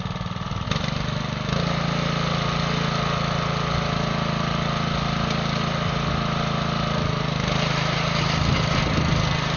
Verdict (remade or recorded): recorded